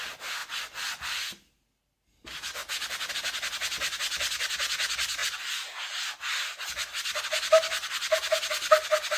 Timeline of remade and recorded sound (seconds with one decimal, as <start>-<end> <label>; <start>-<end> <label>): 0.0-9.2 recorded